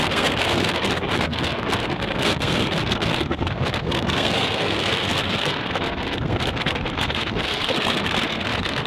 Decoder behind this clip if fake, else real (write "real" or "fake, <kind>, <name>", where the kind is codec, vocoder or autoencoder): fake, codec, SNAC